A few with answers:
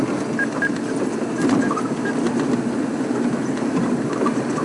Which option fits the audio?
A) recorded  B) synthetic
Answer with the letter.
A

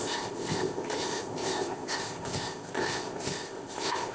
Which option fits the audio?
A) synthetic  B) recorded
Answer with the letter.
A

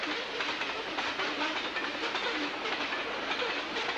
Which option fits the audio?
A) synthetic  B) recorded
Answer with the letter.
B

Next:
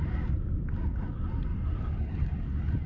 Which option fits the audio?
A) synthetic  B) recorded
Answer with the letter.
B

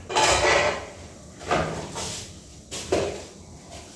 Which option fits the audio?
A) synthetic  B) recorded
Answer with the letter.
B